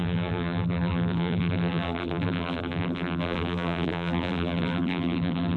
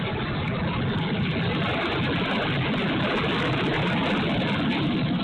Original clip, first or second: second